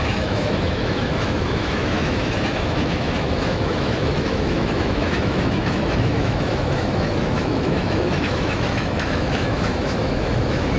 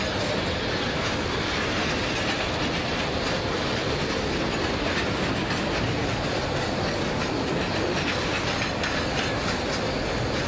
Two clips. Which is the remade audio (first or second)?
first